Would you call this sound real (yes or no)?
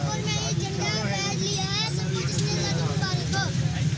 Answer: yes